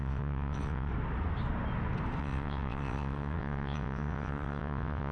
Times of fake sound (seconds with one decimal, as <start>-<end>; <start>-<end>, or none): 0.0-0.9; 2.2-5.1